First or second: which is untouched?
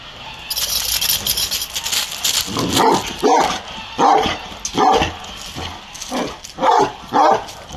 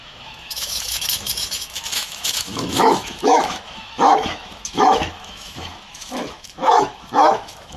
first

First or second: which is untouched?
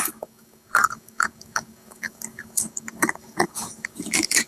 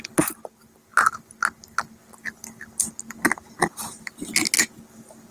second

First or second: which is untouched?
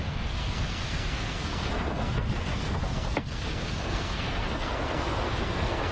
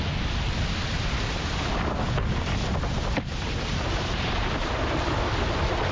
second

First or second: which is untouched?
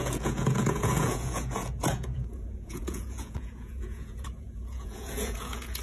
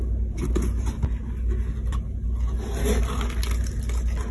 second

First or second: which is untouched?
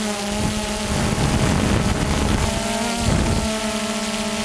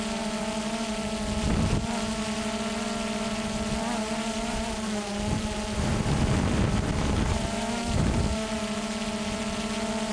first